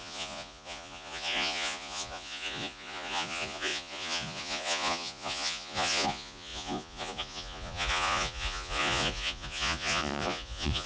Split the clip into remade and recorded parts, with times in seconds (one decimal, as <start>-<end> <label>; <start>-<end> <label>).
0.0-10.9 remade

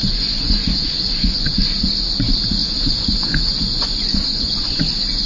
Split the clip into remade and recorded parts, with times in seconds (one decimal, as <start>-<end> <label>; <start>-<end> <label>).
0.0-1.6 remade; 1.6-2.6 recorded; 2.6-4.8 remade; 4.8-5.3 recorded